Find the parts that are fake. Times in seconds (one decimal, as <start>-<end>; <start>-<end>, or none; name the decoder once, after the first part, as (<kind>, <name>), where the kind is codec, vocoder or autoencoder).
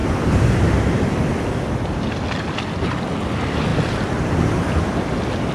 none